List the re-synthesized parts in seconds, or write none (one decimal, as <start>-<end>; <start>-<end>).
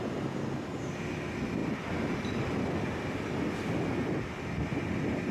none